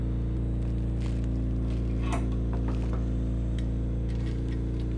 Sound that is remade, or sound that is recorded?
recorded